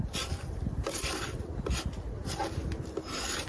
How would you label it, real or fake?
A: real